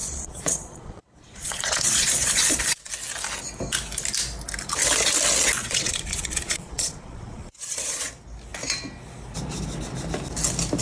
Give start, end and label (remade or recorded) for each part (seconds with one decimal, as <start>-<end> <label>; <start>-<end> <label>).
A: 0.0-2.9 remade; 2.9-5.6 recorded; 5.6-8.1 remade; 8.1-10.8 recorded